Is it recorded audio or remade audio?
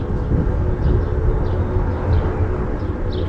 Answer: recorded